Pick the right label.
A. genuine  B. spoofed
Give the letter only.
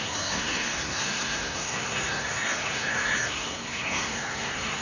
B